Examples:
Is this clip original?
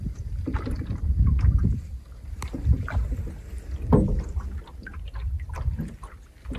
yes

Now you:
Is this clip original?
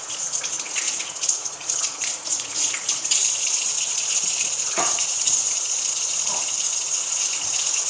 no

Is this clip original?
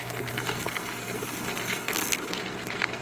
no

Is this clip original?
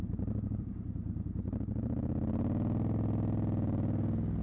yes